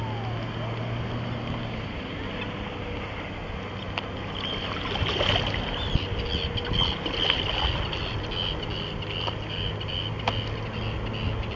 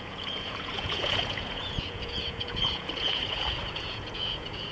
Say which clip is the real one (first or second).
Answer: first